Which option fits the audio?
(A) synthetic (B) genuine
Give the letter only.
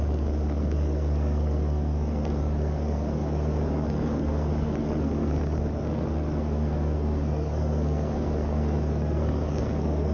A